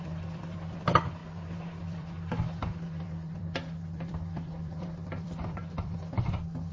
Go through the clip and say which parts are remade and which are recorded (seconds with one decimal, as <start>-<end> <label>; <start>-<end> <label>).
0.0-6.7 remade